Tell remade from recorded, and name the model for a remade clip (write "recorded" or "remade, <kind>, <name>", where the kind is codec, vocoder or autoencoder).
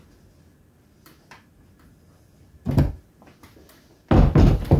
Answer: recorded